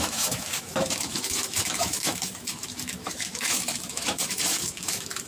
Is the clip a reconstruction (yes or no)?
yes